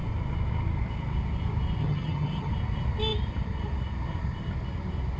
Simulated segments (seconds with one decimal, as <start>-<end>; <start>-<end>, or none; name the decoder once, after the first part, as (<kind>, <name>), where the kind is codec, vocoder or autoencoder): 1.8-2.5 (vocoder, HiFi-GAN)

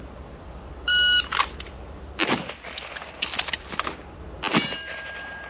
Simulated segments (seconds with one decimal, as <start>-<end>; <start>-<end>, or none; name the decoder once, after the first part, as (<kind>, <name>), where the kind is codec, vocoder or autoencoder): 0.0-0.9 (vocoder, BigVGAN v2); 3.6-5.5